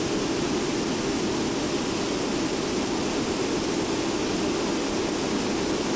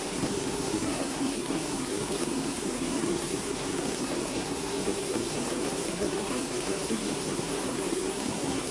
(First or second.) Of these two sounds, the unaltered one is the first